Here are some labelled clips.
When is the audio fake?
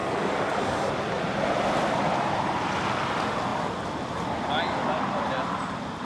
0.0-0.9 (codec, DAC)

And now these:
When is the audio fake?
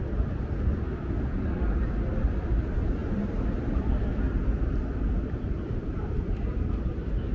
0.0-7.3 (vocoder, BigVGAN v2)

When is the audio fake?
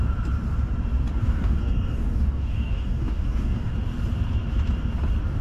1.2-3.7 (codec, DAC)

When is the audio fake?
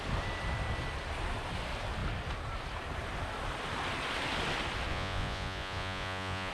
4.9-6.5 (vocoder, Vocos)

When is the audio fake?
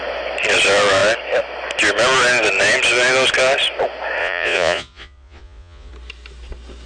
4.2-5.9 (vocoder, Vocos)